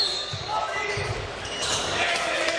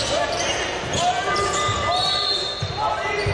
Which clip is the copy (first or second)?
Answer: first